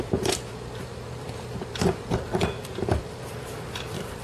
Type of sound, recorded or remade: remade